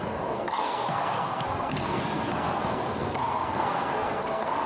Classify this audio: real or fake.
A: fake